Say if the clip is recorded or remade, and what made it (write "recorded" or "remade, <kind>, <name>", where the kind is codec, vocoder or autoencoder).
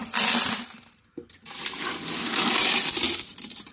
recorded